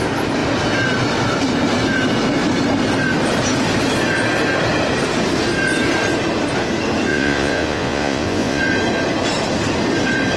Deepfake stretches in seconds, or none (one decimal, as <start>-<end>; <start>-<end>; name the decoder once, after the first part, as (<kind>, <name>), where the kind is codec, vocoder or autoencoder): 7.1-8.6 (vocoder, Vocos)